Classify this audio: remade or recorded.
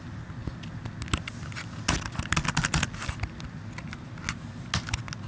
recorded